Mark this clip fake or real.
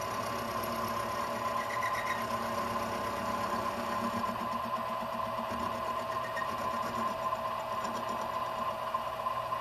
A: real